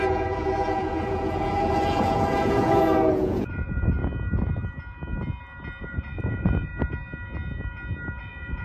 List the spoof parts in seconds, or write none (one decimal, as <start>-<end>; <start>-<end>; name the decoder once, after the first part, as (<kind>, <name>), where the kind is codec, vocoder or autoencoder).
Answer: 0.0-4.0 (vocoder, Vocos); 5.8-6.7; 8.2-8.6